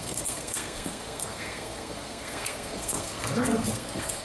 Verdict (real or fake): fake